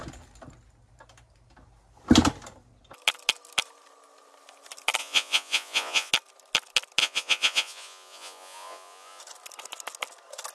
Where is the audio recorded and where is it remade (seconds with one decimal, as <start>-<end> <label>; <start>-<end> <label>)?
0.0-5.0 recorded; 5.0-6.1 remade; 6.1-7.0 recorded; 7.0-9.2 remade; 9.2-10.5 recorded